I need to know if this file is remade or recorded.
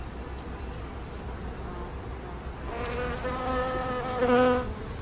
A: recorded